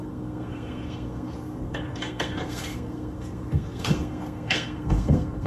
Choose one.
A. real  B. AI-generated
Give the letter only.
B